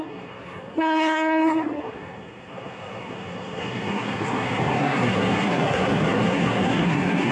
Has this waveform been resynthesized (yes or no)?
yes